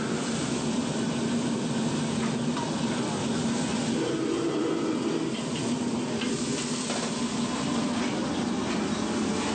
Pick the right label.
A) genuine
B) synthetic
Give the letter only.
A